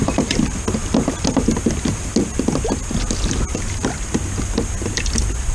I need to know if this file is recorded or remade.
recorded